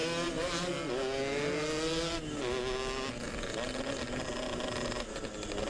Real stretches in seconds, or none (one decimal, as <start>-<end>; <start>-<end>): 0.0-5.7